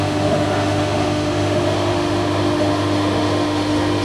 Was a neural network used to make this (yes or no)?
yes